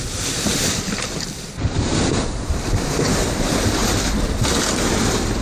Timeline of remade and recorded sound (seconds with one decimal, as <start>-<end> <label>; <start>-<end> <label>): 0.0-0.5 recorded; 0.5-2.4 remade; 2.4-3.8 recorded; 3.8-5.4 remade